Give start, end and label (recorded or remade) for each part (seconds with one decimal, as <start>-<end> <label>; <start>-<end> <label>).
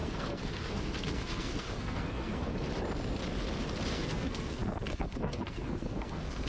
0.0-2.5 remade; 2.5-3.9 recorded; 3.9-6.5 remade